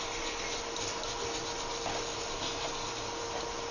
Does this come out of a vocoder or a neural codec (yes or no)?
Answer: no